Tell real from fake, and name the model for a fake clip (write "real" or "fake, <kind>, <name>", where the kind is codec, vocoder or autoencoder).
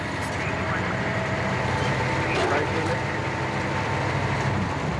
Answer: fake, vocoder, BigVGAN v2